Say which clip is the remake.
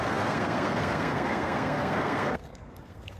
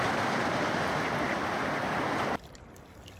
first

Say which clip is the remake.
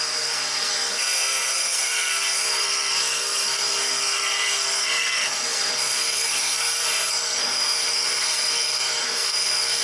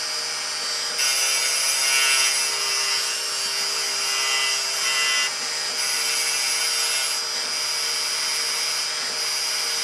first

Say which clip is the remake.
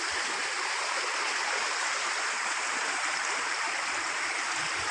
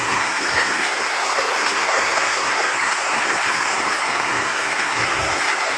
second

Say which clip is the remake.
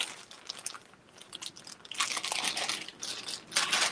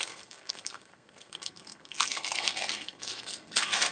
second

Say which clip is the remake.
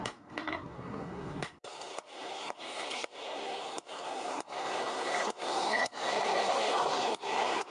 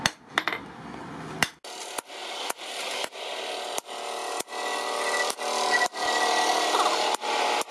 first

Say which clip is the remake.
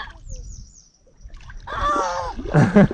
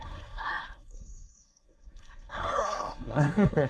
second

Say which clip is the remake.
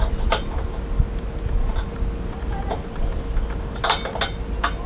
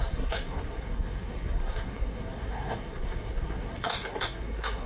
second